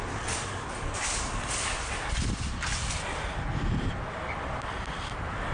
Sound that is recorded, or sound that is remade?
recorded